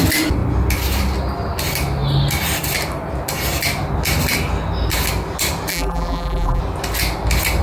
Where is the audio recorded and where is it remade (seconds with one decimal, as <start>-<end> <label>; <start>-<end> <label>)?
0.0-5.7 recorded; 5.7-6.6 remade; 6.6-7.6 recorded

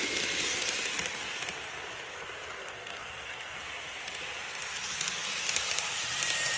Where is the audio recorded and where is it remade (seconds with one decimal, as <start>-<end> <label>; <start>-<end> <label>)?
0.0-2.6 recorded; 2.6-3.6 remade; 3.6-6.6 recorded

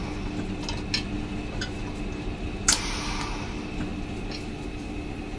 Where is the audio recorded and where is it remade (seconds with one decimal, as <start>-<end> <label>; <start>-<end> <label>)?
0.0-5.4 recorded

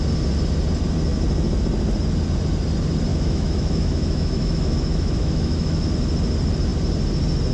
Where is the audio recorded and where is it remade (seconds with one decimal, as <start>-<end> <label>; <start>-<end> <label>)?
0.0-3.1 recorded; 3.1-5.9 remade; 5.9-7.5 recorded

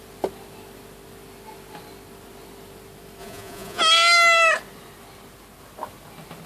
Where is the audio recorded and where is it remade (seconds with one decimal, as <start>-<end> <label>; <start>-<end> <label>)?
0.0-3.2 recorded; 3.2-3.8 remade; 3.8-6.5 recorded

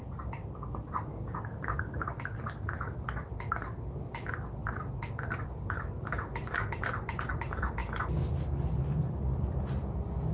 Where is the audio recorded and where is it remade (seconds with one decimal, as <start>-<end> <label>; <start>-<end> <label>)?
0.0-1.1 recorded; 1.1-2.1 remade; 2.1-10.3 recorded